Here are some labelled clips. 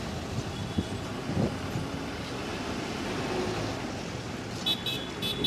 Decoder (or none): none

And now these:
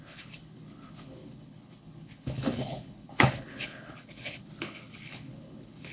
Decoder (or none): codec, HILCodec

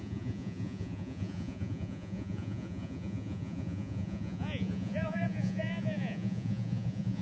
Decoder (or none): vocoder, Vocos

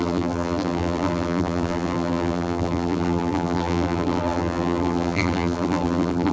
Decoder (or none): vocoder, BigVGAN v2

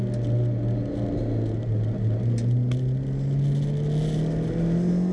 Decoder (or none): none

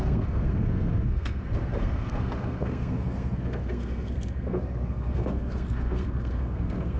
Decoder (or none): codec, SNAC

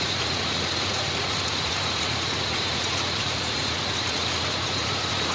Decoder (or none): vocoder, Vocos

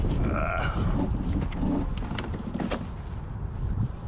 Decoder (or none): none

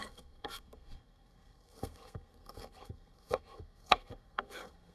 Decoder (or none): codec, SNAC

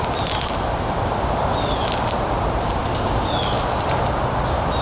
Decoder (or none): none